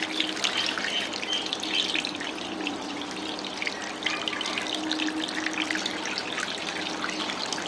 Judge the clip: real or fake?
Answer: real